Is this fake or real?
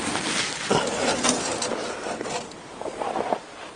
real